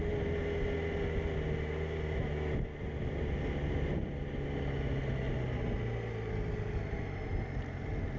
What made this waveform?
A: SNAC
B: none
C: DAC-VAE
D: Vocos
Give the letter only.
B